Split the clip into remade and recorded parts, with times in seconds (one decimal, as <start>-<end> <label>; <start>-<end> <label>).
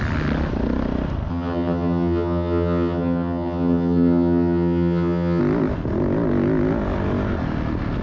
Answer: 0.0-1.3 recorded; 1.3-5.4 remade; 5.4-8.0 recorded